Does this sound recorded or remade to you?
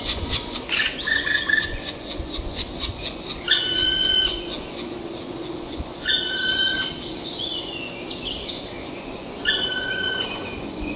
remade